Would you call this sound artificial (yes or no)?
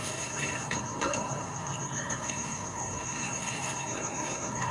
yes